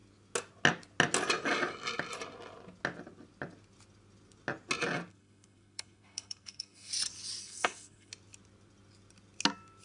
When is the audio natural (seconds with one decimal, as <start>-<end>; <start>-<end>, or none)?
0.0-5.1; 6.9-7.4; 8.1-9.8